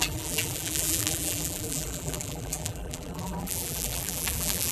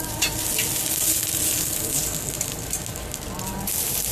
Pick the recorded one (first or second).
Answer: second